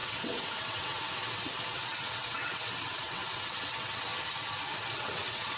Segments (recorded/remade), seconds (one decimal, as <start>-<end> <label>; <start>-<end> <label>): 0.0-4.1 remade; 4.1-5.0 recorded; 5.0-5.6 remade